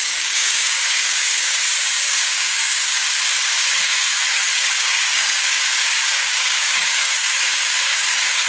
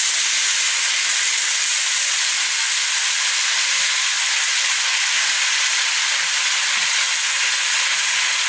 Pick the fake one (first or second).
first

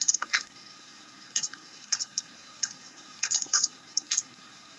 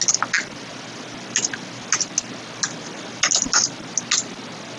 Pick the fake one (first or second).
first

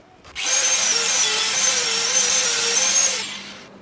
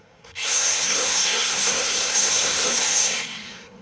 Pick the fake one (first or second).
second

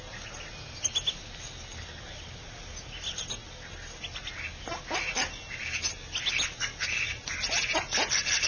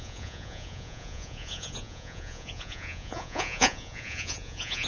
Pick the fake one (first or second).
second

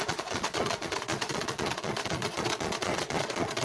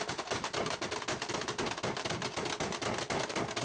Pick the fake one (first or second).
first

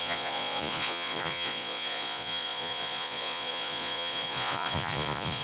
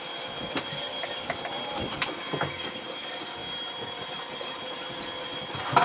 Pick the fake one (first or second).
first